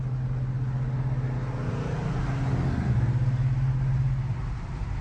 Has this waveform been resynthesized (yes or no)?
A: no